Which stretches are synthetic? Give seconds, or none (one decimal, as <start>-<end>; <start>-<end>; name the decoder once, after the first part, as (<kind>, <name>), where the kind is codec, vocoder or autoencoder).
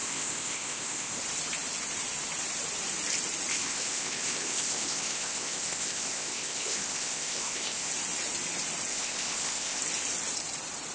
0.0-1.2 (codec, ZipCodec); 3.5-7.9; 8.9-9.8